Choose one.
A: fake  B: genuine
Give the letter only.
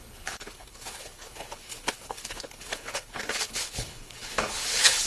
A